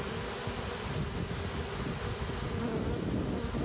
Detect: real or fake real